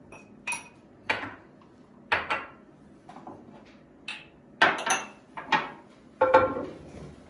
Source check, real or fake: real